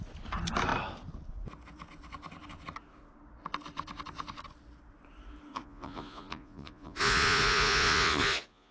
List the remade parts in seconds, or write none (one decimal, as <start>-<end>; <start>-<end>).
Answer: 5.5-8.7